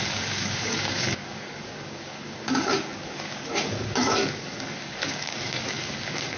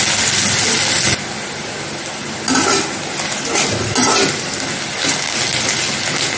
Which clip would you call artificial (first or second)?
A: first